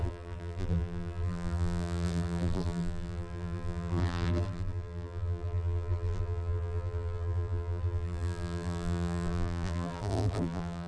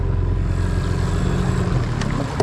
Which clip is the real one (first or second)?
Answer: second